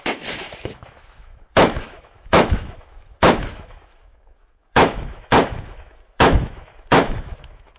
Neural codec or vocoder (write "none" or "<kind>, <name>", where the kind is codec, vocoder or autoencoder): autoencoder, DAC-VAE